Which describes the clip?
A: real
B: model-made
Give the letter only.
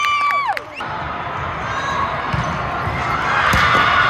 A